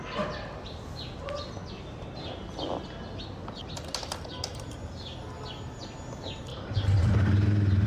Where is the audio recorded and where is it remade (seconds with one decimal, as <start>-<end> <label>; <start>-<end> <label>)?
0.0-6.5 recorded; 6.5-7.9 remade